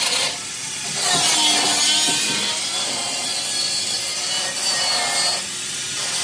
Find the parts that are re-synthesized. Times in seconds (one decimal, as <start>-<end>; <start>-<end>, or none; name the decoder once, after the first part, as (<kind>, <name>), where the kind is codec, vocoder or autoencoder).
none